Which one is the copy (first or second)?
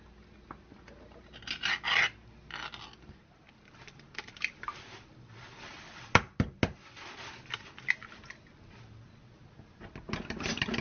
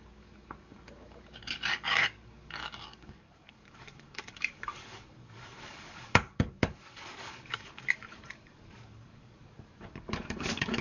second